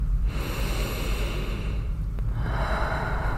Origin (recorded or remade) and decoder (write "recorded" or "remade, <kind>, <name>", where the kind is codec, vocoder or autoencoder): remade, vocoder, BigVGAN v2